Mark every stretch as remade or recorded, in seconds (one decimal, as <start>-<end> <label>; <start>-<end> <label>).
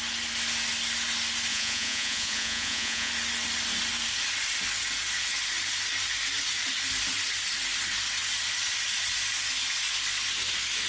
0.0-1.5 recorded; 1.5-3.1 remade; 3.1-10.9 recorded